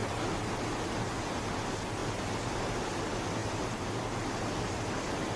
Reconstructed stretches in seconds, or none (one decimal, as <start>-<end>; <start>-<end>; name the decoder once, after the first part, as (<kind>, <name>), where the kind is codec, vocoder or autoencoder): 3.4-4.2 (vocoder, BigVGAN v2)